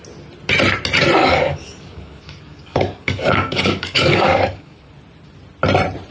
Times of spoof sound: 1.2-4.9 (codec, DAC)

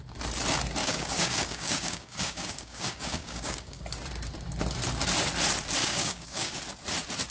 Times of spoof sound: 0.8-3.8 (codec, DAC); 5.8-6.6